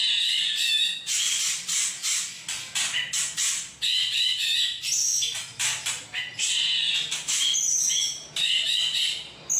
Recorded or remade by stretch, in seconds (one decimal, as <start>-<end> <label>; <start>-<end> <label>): 0.0-1.7 remade; 1.7-4.3 recorded; 4.3-5.1 remade; 5.1-6.2 recorded; 6.2-9.6 remade